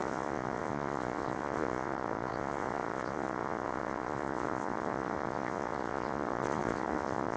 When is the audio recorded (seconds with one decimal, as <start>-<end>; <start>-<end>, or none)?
none

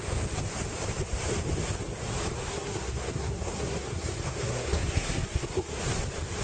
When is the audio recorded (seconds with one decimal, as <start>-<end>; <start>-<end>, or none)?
0.0-2.4; 5.8-6.4